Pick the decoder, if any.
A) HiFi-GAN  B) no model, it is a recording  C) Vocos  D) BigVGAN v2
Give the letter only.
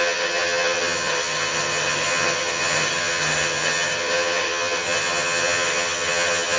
A